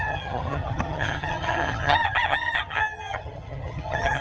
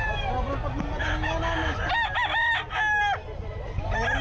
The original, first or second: second